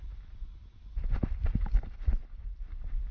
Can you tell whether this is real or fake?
real